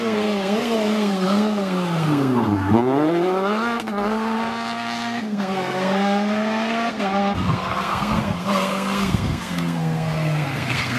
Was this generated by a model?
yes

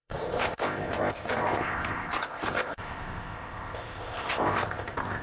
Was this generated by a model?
yes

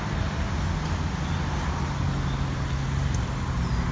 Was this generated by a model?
no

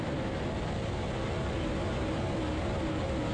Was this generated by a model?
no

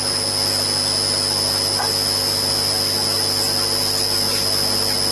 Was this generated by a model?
no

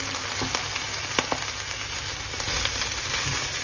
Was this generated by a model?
no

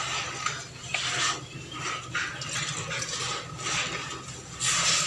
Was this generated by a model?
no